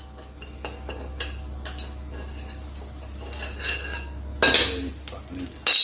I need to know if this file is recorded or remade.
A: recorded